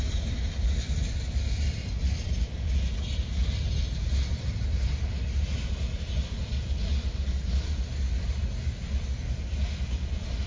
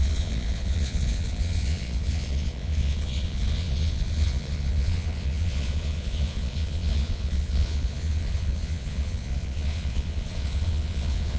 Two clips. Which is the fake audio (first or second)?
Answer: second